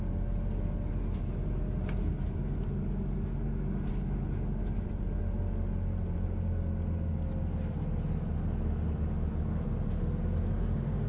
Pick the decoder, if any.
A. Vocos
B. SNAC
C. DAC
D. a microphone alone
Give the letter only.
D